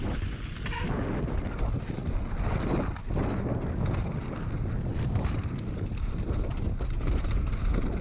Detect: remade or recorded recorded